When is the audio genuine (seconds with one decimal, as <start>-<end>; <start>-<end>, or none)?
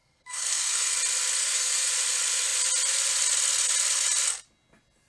0.9-1.4; 1.9-5.1